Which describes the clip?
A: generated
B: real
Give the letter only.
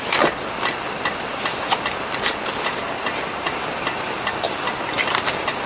B